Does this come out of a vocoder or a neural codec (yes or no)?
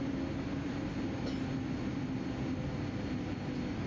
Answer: no